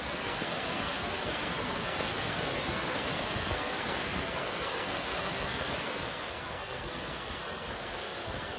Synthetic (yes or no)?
yes